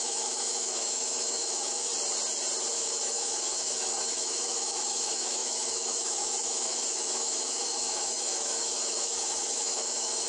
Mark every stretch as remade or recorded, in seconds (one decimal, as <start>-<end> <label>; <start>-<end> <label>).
0.0-1.9 remade; 1.9-2.7 recorded; 2.7-10.3 remade